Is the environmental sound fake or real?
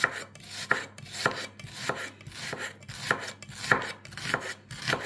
real